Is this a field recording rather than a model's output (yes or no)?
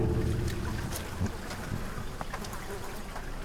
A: yes